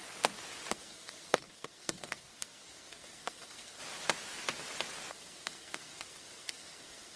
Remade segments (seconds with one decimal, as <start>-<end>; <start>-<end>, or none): 0.7-3.8; 5.1-7.2